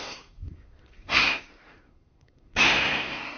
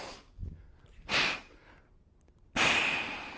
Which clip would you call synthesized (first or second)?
first